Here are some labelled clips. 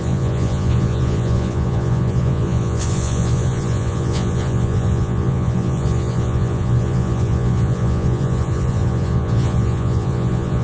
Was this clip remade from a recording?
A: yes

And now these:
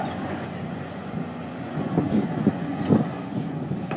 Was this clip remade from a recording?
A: yes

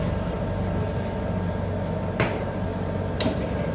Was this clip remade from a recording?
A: no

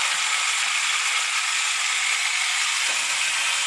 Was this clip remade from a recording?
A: no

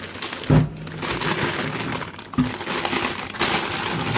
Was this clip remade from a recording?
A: no